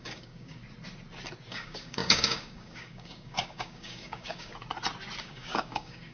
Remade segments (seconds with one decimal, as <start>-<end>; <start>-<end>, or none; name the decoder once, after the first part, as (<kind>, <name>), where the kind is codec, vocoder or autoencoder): 0.0-0.6 (codec, DAC); 1.5-4.5; 5.2-6.1